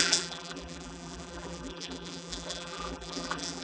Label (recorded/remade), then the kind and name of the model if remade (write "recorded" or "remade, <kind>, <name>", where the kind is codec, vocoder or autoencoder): remade, vocoder, BigVGAN v2